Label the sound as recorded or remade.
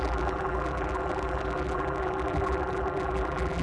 remade